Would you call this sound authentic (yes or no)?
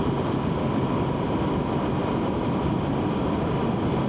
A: yes